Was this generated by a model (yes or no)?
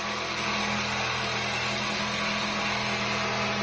no